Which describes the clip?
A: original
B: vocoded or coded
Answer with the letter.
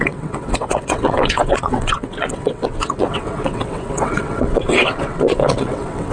B